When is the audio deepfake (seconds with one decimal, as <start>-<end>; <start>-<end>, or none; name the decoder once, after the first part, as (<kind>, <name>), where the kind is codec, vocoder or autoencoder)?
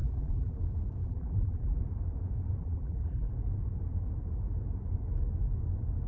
0.0-0.6 (vocoder, BigVGAN v2); 1.0-1.8; 2.6-3.3